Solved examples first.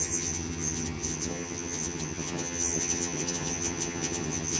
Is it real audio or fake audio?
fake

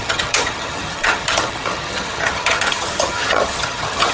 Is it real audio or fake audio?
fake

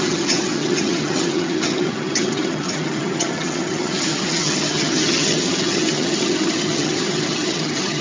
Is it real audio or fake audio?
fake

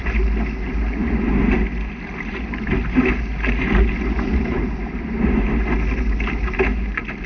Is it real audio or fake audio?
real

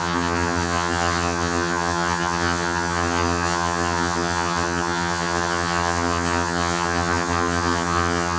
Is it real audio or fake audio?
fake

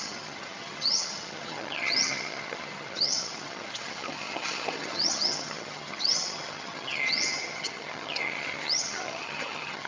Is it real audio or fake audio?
fake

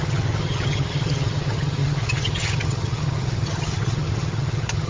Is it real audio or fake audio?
fake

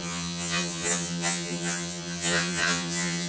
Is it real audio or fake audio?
fake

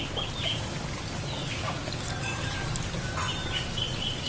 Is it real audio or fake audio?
real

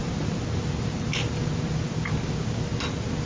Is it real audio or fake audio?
real